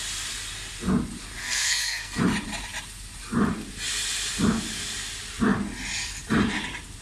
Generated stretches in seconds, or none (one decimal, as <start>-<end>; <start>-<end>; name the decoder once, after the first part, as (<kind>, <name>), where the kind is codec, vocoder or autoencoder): 1.4-2.2 (codec, SNAC)